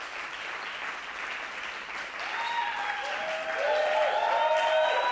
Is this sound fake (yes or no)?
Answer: no